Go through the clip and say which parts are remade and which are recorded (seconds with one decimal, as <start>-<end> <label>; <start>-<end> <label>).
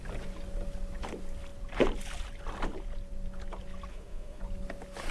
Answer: 0.0-3.9 recorded; 3.9-4.4 remade; 4.4-5.1 recorded